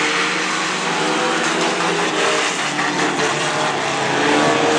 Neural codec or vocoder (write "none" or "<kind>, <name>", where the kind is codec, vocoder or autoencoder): none